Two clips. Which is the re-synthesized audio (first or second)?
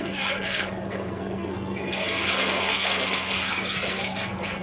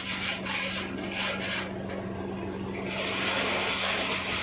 first